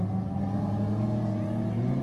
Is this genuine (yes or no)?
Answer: yes